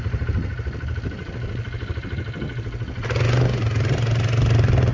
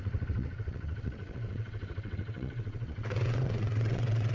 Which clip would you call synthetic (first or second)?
second